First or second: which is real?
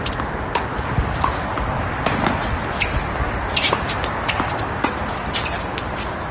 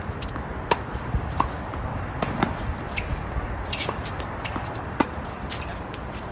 first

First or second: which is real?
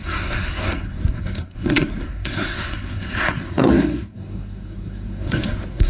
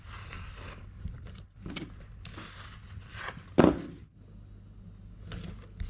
second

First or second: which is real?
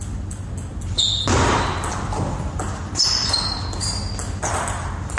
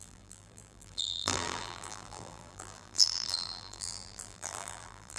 first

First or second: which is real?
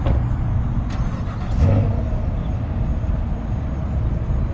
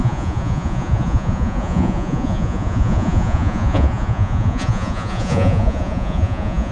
first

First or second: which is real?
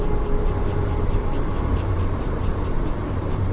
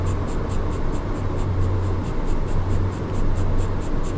second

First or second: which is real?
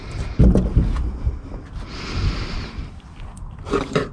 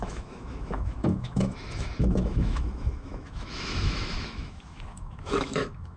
first